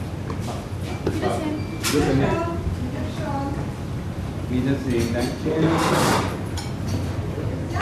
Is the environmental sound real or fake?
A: real